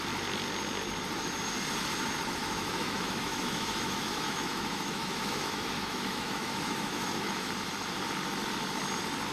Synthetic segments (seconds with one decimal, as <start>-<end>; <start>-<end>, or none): 2.4-7.5